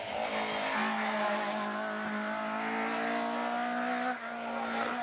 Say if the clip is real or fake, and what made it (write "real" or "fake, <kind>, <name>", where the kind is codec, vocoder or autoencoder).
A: real